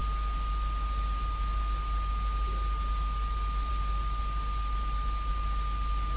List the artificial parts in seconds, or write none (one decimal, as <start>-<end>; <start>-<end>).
none